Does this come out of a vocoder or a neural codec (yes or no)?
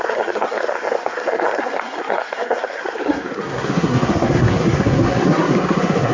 yes